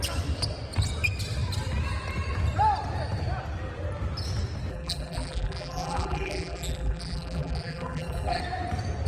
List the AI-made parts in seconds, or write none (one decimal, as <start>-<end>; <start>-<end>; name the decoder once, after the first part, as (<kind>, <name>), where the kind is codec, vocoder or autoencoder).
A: 4.7-8.4 (vocoder, BigVGAN v2)